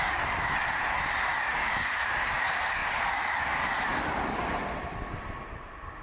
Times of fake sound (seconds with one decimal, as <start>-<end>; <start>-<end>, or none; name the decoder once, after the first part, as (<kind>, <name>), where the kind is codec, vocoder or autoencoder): none